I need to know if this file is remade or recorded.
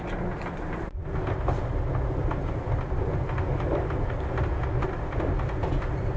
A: recorded